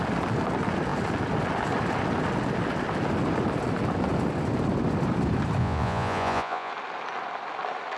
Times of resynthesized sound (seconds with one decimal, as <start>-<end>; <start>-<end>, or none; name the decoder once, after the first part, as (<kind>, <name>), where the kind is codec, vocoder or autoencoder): 5.6-6.7 (vocoder, Vocos)